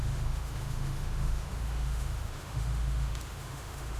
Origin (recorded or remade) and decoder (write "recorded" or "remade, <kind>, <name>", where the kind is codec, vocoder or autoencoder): remade, autoencoder, DAC-VAE